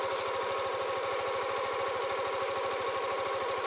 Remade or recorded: recorded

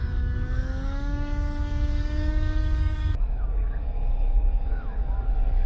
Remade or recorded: remade